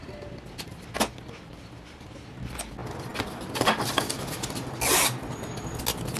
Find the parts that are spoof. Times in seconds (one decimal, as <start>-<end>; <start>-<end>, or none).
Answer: none